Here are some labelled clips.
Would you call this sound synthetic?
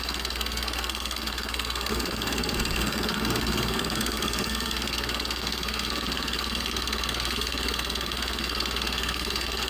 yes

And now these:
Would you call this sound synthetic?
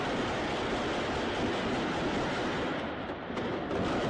no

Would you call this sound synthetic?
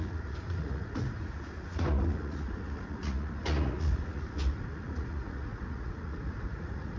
yes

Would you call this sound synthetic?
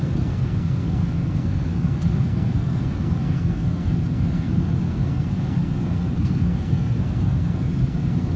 yes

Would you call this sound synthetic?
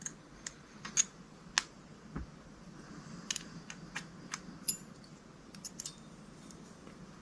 no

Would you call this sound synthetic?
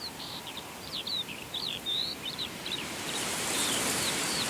yes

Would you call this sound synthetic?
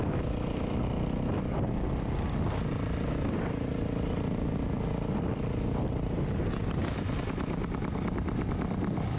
no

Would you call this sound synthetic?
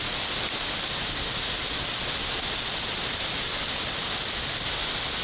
no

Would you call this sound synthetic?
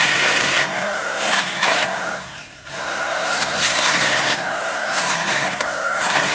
yes